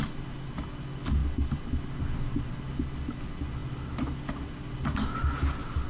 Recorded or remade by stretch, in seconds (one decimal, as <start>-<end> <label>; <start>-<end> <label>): 0.0-5.9 recorded